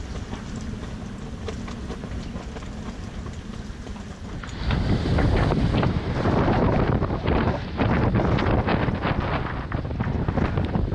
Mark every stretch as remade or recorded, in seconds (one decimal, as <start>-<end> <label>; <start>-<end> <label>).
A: 0.0-10.9 recorded